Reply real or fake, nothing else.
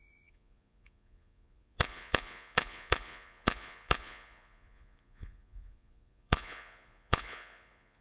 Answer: fake